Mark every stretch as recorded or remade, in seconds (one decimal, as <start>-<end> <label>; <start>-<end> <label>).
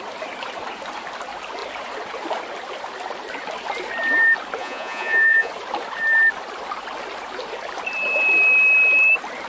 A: 0.0-4.6 recorded; 4.6-5.5 remade; 5.5-9.5 recorded